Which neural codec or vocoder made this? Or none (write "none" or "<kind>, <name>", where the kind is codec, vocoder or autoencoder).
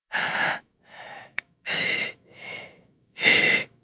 autoencoder, DAC-VAE